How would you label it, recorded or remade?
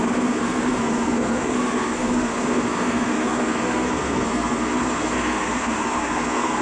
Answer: remade